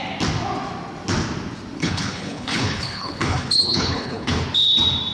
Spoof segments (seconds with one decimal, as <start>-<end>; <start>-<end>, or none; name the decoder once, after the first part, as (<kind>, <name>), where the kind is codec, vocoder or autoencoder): 1.8-4.4 (codec, HILCodec)